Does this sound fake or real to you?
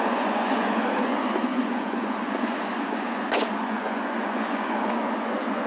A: fake